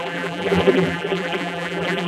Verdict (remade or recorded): remade